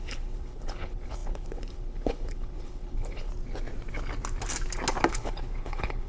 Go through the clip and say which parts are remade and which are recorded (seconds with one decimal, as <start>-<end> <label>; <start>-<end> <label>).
0.0-3.3 remade; 3.3-5.1 recorded; 5.1-6.1 remade